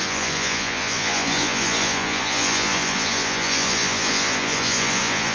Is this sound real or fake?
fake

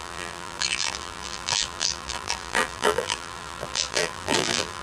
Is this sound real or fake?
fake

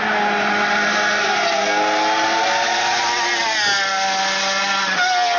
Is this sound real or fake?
real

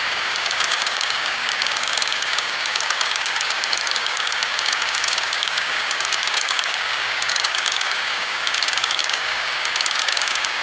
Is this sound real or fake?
fake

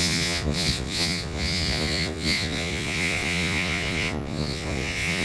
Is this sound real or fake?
fake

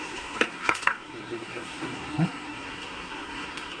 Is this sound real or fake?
fake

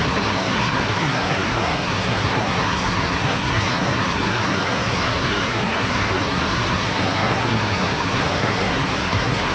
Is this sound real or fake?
fake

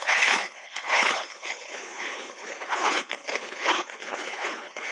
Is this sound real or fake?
fake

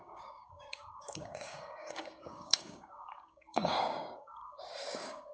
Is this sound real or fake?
fake